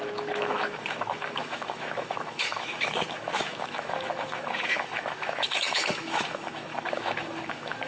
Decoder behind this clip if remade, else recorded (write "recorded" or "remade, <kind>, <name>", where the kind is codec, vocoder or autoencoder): remade, autoencoder, DAC-VAE